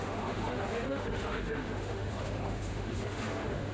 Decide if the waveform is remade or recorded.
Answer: remade